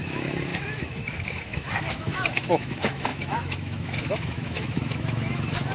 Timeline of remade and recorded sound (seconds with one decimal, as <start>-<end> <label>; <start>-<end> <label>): 0.0-5.7 remade